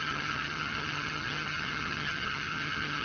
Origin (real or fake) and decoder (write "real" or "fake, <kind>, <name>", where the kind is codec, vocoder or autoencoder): fake, vocoder, HiFi-GAN